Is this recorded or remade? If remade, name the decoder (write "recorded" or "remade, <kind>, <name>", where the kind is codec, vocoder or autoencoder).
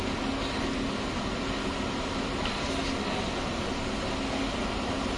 recorded